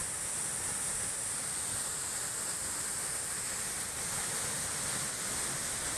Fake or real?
real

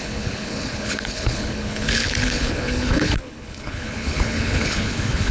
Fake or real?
fake